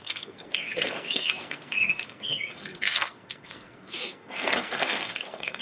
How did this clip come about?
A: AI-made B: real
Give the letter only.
A